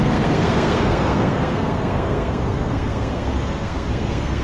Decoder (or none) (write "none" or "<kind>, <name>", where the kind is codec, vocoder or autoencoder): codec, SNAC